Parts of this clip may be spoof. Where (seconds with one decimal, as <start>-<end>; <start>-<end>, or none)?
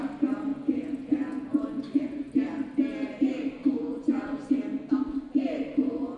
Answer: 0.5-2.3; 3.6-4.6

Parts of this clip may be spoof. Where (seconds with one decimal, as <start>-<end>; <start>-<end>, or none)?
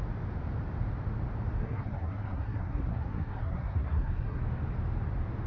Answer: 1.6-4.4